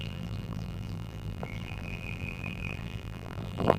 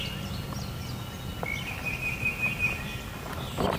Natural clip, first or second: second